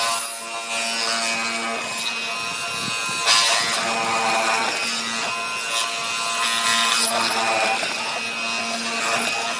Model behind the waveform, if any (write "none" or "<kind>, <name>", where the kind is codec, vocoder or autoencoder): none